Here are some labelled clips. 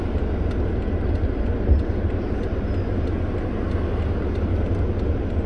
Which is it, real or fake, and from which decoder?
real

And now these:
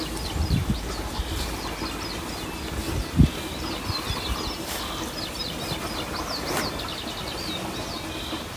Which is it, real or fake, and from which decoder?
real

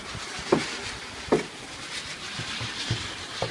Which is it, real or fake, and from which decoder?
real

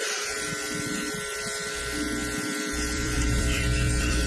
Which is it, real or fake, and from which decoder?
fake, vocoder, BigVGAN v2